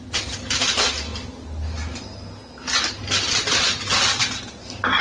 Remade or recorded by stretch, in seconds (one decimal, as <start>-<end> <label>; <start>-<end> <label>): 0.0-5.0 recorded